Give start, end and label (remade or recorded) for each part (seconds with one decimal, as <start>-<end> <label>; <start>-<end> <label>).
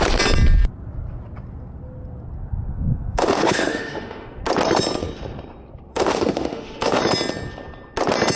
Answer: 0.0-2.7 recorded; 2.7-4.4 remade; 4.4-5.9 recorded; 5.9-7.0 remade; 7.0-8.4 recorded